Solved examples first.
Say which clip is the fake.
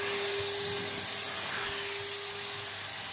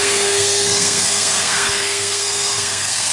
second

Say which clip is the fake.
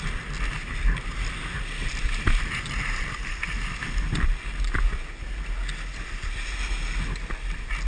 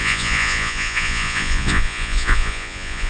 second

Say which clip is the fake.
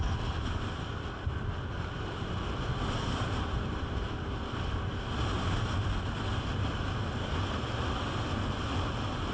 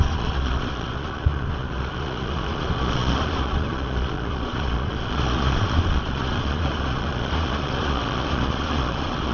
second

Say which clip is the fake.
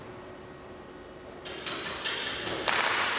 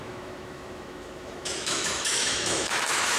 second